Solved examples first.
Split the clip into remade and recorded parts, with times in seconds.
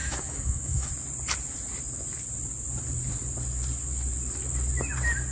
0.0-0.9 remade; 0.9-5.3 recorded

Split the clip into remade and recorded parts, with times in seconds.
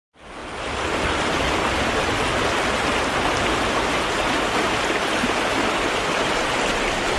0.0-7.2 recorded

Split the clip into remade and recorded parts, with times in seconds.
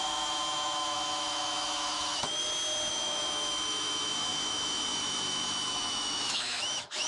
0.0-2.4 remade; 2.4-2.9 recorded; 2.9-7.1 remade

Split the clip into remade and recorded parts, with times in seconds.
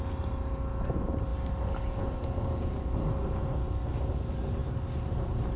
0.0-5.6 recorded